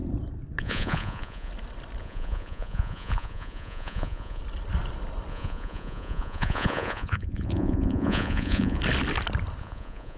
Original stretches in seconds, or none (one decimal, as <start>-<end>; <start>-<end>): 0.0-0.6; 1.5-2.0; 4.4-5.3; 8.8-9.6